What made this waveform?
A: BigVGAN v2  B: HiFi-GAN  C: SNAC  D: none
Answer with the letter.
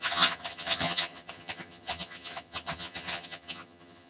B